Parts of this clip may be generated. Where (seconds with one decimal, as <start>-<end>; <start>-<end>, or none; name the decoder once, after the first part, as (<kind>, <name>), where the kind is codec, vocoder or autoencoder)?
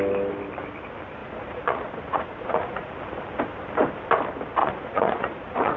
1.2-2.9 (vocoder, Vocos); 4.6-5.8